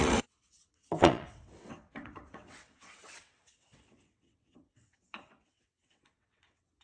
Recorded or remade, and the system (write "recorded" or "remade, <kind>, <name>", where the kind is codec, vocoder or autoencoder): remade, vocoder, WaveNeXt